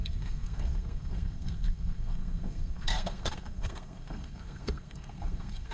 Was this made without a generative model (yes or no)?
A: no